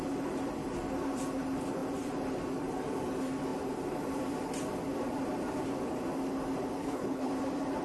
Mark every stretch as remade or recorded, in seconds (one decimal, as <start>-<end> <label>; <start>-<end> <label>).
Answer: 0.0-6.8 recorded; 6.8-7.3 remade; 7.3-7.8 recorded